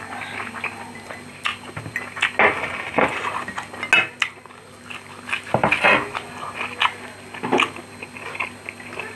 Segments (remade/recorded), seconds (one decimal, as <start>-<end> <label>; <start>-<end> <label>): 0.0-9.2 recorded